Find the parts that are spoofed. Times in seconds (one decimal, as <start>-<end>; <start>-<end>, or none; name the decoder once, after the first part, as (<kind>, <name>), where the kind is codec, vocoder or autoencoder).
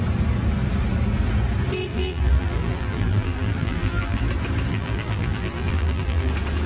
1.9-4.2 (vocoder, BigVGAN v2); 4.7-6.3